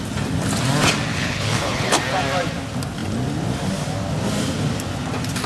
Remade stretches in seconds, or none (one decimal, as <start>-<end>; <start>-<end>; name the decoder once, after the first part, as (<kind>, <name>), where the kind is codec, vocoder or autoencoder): 1.1-2.0 (codec, HILCodec)